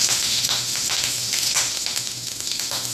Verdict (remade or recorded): remade